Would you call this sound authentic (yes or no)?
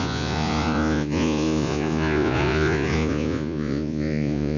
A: no